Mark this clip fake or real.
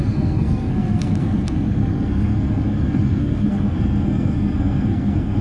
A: fake